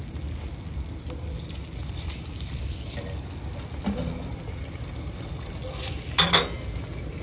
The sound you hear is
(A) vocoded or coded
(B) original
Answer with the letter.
B